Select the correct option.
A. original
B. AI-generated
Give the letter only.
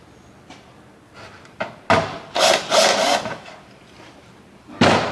A